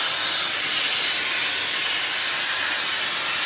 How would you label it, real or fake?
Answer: real